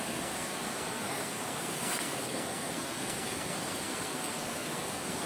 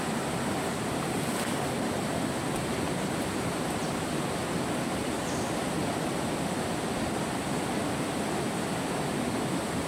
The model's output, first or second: first